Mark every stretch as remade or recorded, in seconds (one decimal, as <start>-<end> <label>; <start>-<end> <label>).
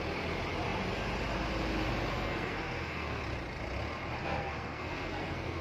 0.0-2.1 recorded; 2.1-3.2 remade; 3.2-4.2 recorded; 4.2-5.6 remade